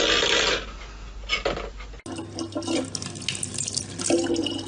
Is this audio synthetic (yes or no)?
no